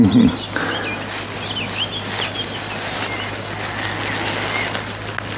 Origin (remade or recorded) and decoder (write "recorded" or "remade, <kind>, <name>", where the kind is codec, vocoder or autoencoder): recorded